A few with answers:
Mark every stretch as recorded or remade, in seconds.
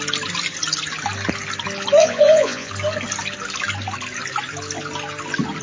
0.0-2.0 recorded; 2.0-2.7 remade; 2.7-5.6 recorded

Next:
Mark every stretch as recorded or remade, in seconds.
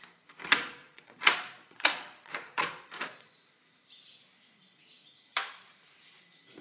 0.0-0.8 recorded; 0.8-3.5 remade; 3.5-6.6 recorded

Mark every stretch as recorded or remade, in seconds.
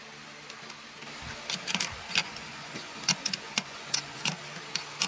0.0-2.2 recorded; 2.2-4.3 remade; 4.3-5.1 recorded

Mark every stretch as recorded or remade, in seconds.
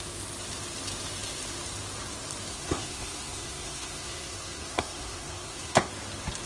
0.0-2.5 recorded; 2.5-5.9 remade; 5.9-6.5 recorded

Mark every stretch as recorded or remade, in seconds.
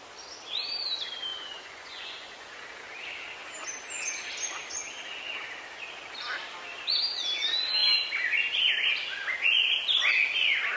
0.0-1.3 recorded; 1.3-2.6 remade; 2.6-10.8 recorded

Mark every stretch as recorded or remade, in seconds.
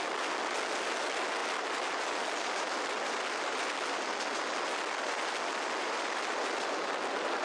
0.0-7.4 recorded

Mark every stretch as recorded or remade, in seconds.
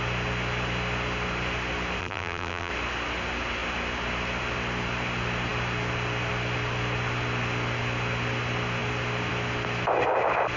0.0-2.0 recorded; 2.0-2.7 remade; 2.7-10.6 recorded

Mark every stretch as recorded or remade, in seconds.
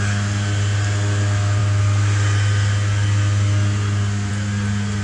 0.0-5.0 recorded